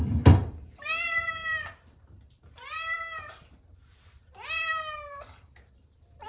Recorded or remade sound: remade